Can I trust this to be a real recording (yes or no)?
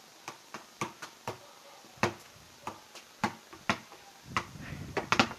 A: yes